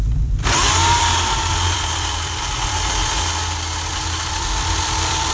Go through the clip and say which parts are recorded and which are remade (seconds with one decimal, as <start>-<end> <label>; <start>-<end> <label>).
0.0-0.4 remade; 0.4-1.0 recorded; 1.0-3.0 remade; 3.0-4.3 recorded; 4.3-5.3 remade